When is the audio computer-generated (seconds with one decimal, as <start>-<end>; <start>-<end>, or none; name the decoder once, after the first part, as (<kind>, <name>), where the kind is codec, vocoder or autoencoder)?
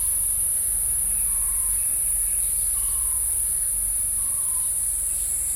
none